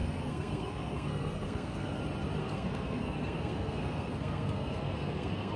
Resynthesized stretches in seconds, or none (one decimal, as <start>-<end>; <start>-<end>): 0.0-2.0; 2.4-5.6